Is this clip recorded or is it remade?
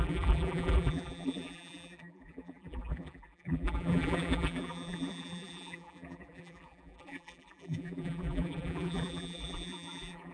remade